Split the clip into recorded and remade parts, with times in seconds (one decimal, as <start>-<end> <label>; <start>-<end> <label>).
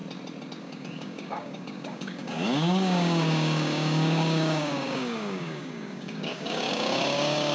0.0-0.6 recorded; 0.6-7.5 remade